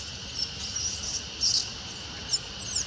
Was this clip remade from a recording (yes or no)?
no